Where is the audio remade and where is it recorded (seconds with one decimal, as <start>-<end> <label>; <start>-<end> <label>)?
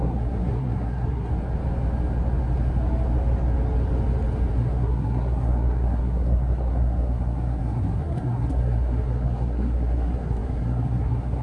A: 0.0-1.3 remade; 1.3-4.5 recorded; 4.5-11.4 remade